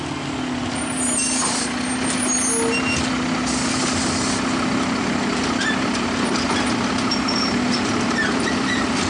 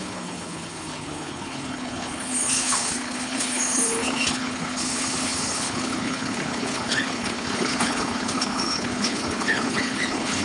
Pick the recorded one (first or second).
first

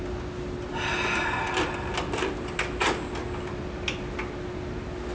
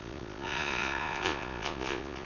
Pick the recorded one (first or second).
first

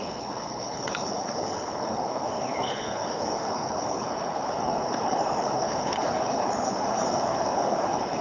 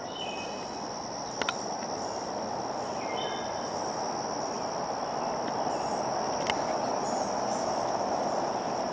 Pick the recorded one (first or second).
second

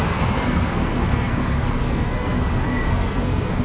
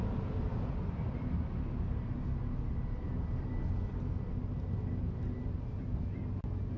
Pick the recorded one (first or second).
second